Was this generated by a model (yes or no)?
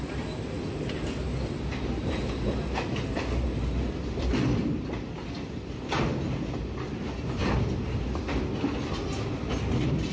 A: no